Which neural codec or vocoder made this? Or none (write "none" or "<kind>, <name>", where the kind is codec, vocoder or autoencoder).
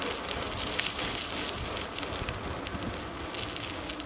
none